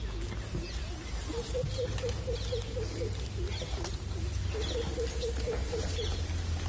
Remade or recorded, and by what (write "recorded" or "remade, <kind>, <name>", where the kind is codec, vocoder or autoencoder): recorded